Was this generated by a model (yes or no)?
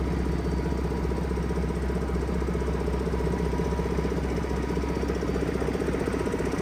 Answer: no